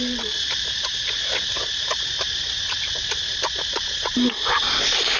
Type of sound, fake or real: fake